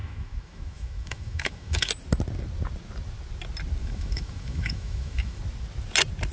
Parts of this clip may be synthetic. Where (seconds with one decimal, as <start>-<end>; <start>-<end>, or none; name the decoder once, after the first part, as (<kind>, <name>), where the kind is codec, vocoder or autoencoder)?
0.0-1.9 (autoencoder, DAC-VAE); 3.8-5.4